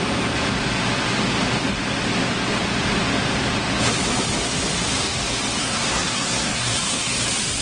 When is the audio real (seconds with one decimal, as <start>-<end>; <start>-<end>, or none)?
0.0-5.6; 7.0-7.6